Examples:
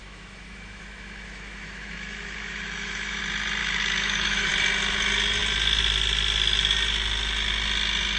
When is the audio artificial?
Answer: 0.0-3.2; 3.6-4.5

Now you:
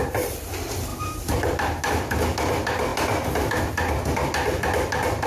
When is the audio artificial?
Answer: 0.0-0.5; 0.9-1.8

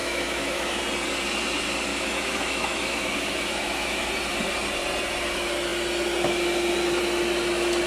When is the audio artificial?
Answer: 0.0-0.8; 1.9-4.1

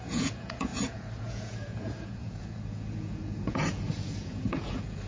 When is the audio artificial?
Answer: 0.0-5.1

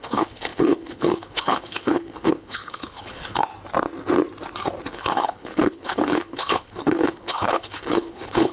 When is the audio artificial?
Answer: 0.0-3.5; 4.9-8.5